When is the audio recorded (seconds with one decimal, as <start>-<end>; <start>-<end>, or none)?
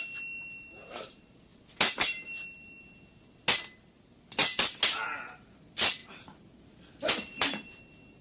0.0-8.2